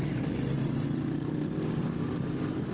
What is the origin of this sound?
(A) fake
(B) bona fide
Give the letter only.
B